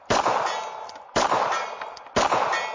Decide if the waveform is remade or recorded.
recorded